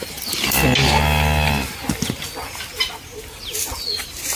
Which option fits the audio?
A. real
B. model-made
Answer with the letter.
A